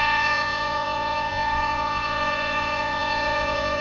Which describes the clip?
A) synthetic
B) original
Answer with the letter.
A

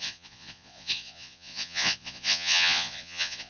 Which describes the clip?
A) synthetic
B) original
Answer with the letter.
A